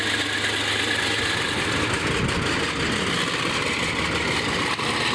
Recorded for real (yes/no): yes